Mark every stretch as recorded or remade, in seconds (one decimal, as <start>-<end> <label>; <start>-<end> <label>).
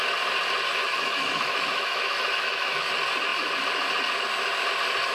0.0-0.7 recorded; 0.7-2.9 remade; 2.9-5.1 recorded